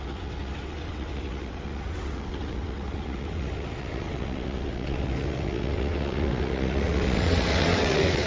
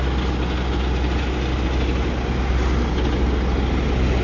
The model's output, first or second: first